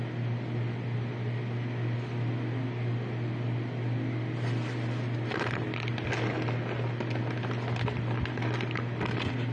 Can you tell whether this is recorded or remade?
recorded